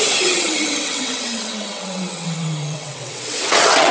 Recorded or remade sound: remade